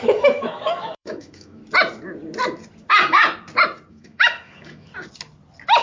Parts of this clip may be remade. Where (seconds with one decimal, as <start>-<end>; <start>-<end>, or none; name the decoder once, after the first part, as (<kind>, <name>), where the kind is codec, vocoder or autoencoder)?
0.0-1.6 (autoencoder, DAC-VAE); 3.9-4.9